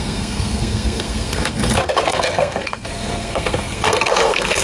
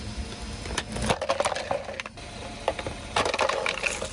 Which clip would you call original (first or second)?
second